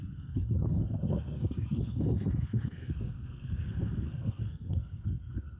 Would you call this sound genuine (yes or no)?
no